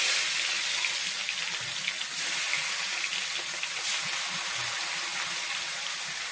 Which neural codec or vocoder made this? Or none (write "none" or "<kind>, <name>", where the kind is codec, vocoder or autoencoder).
none